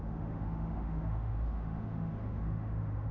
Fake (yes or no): yes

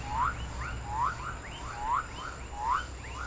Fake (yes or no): no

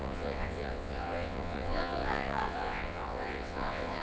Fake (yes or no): yes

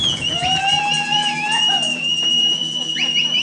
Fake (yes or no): yes